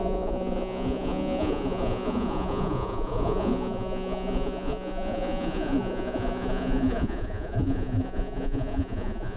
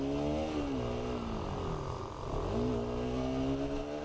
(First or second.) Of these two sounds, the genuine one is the second